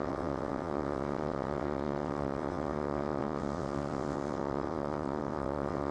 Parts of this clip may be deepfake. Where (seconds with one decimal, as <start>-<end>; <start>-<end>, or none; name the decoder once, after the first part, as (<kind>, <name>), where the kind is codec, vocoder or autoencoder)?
0.0-5.9 (vocoder, WaveNeXt)